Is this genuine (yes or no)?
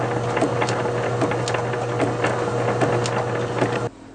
yes